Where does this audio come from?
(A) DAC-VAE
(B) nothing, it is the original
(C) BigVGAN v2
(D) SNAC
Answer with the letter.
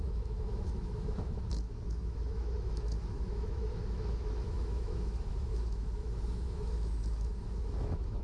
A